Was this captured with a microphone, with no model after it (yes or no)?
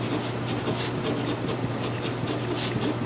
yes